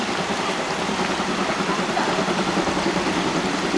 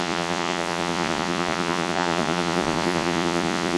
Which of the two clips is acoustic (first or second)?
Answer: first